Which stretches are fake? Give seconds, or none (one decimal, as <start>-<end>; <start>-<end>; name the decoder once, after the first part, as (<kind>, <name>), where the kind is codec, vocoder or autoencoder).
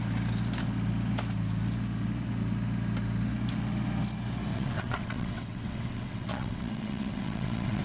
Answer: 4.5-7.8 (vocoder, WaveNeXt)